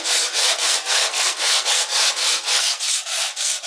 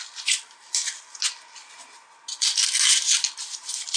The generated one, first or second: first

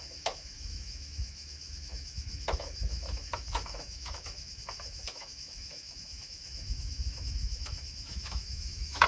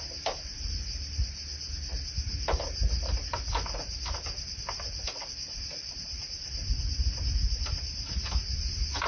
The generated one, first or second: first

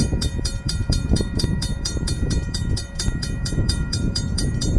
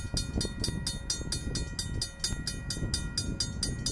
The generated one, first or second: first